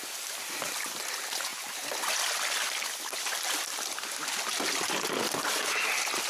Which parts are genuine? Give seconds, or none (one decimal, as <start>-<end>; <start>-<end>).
0.0-6.3